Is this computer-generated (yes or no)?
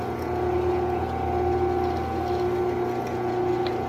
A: no